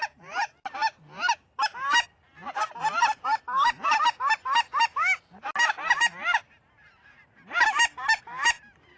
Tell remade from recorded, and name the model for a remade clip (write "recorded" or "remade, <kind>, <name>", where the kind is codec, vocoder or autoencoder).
recorded